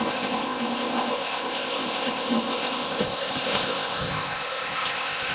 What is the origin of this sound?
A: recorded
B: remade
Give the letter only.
B